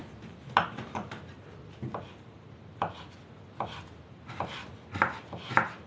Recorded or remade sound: recorded